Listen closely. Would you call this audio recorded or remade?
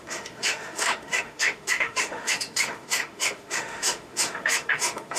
remade